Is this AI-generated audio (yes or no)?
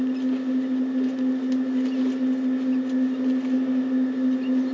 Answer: no